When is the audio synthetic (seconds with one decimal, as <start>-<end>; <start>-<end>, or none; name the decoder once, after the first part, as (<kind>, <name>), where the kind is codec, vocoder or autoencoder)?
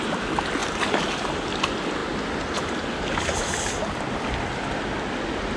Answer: none